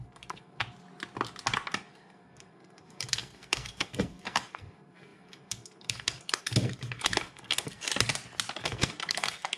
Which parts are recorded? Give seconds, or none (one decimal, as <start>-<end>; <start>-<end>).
0.6-1.9; 7.9-8.6